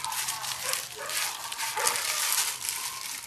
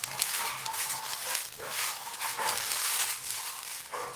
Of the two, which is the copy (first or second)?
second